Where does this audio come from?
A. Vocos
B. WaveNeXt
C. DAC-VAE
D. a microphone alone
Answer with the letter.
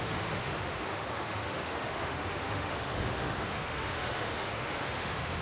C